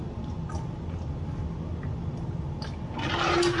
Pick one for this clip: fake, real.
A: real